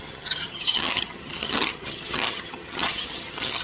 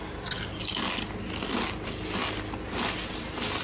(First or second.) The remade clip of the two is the first